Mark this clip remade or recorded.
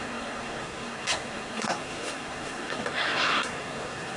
remade